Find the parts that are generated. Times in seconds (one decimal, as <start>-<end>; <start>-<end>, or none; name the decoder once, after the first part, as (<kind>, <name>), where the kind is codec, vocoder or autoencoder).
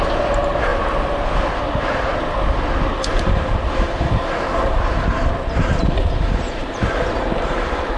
0.0-0.7 (vocoder, BigVGAN v2); 1.7-2.1; 3.1-8.0